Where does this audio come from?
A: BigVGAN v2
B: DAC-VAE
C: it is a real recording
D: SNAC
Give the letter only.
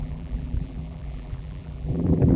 A